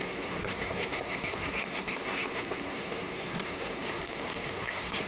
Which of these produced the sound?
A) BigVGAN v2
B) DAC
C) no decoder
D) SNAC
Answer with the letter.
D